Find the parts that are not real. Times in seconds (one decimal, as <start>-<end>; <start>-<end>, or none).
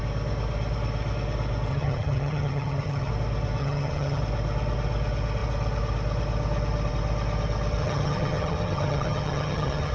1.7-3.1; 3.6-4.2; 7.8-9.9